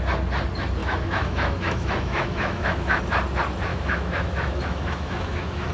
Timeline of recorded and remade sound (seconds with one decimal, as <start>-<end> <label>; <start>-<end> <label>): 0.0-0.8 recorded; 0.8-3.0 remade; 3.0-3.7 recorded; 3.7-5.7 remade

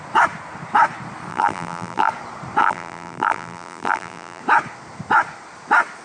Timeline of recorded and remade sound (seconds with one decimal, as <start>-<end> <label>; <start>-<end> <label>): 0.0-1.3 recorded; 1.3-2.1 remade; 2.1-2.6 recorded; 2.6-4.4 remade; 4.4-6.0 recorded

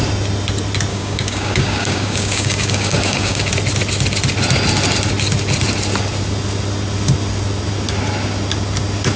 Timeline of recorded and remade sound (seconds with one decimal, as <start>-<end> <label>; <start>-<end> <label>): 0.0-0.9 recorded; 0.9-3.5 remade; 3.5-9.2 recorded